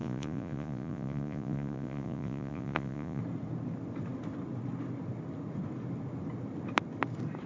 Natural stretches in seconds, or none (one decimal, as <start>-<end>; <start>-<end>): 3.2-7.5